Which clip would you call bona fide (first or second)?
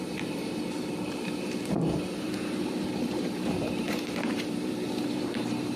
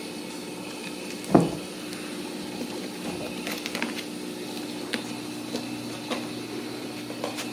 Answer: second